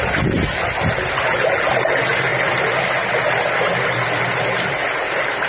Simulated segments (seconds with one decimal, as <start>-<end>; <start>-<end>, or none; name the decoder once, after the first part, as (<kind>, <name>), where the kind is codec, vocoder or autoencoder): none